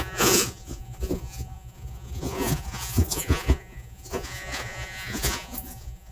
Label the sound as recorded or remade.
remade